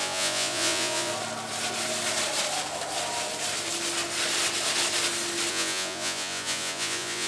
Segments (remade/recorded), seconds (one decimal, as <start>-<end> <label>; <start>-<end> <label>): 0.0-1.1 remade; 1.1-5.5 recorded; 5.5-7.3 remade